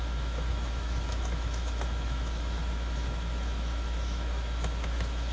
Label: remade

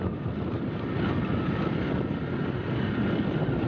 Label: recorded